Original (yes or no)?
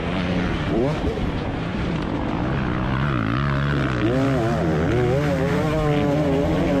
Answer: yes